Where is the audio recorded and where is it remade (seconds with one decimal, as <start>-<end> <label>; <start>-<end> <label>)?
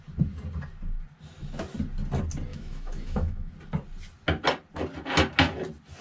0.0-2.5 recorded; 2.5-3.5 remade; 3.5-6.0 recorded